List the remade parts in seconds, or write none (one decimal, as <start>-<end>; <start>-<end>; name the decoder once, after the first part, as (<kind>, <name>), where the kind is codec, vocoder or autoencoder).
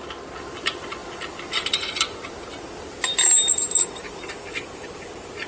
none